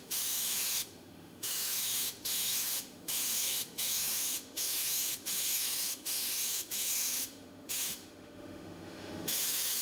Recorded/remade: remade